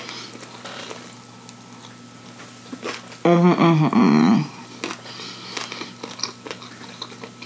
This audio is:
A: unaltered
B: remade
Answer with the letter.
A